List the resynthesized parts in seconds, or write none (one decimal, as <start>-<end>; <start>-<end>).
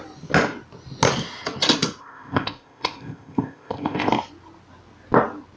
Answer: 2.0-4.1